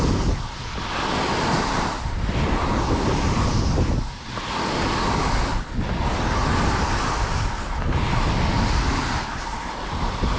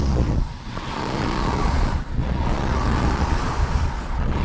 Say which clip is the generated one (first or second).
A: second